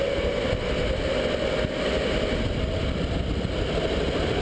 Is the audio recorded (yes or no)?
yes